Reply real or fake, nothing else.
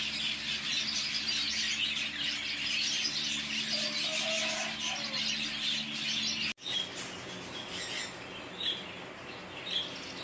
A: real